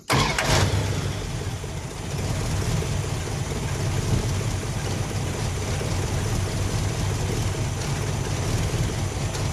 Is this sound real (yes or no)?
yes